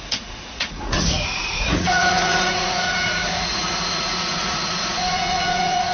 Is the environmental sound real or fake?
fake